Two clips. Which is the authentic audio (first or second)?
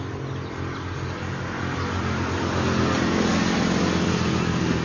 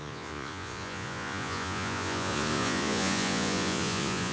first